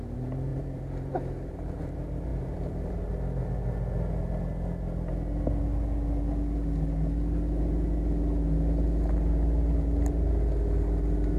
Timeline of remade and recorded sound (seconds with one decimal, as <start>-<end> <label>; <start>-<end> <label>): 0.0-0.5 recorded; 0.5-1.8 remade; 1.8-2.3 recorded; 2.3-3.1 remade; 3.1-11.4 recorded